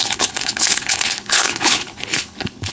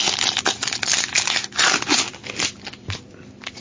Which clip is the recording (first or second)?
second